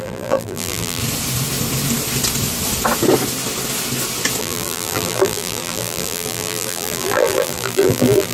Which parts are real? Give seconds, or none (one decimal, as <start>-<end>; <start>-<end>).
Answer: 1.0-4.4